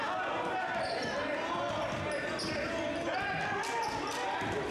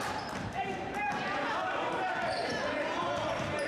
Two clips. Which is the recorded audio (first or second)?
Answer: first